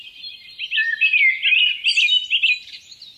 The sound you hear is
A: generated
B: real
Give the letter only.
B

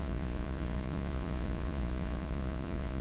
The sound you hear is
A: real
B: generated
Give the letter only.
B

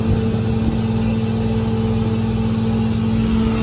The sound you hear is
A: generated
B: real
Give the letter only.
B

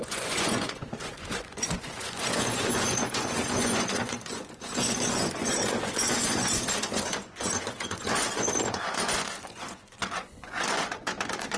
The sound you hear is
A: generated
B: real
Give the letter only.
A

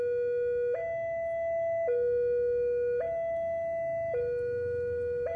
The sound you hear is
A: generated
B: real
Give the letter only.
B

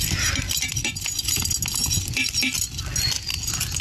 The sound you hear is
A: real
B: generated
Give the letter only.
A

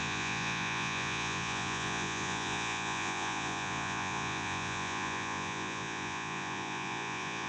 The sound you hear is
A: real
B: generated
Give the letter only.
B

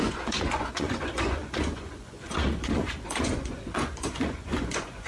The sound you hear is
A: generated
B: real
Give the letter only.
A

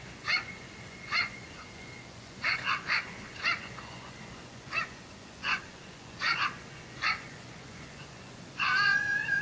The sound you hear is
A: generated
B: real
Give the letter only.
A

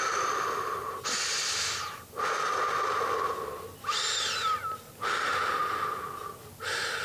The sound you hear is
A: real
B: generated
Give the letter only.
A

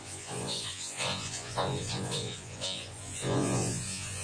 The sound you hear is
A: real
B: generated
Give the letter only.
B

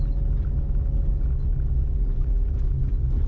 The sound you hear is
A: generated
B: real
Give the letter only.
B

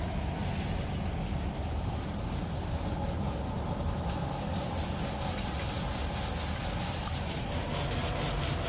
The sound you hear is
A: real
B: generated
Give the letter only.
A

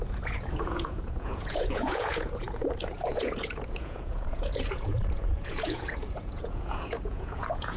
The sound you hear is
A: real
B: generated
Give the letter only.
B